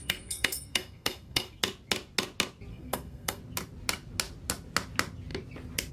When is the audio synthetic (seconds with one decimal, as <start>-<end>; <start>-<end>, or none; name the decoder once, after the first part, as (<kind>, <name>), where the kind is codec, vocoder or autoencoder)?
0.0-1.6 (codec, SNAC); 2.7-3.4